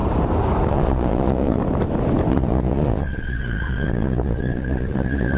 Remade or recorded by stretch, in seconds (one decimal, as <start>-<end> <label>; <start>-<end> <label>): 0.0-0.7 recorded; 0.7-1.6 remade; 1.6-2.3 recorded; 2.3-5.4 remade